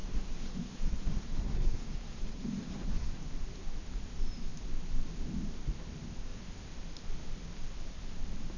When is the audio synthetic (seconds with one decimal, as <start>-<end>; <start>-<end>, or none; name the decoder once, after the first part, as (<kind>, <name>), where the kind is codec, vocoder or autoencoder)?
0.0-3.2 (codec, SNAC)